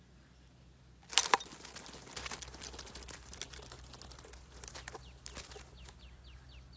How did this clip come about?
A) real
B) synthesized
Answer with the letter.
A